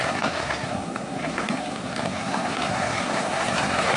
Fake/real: fake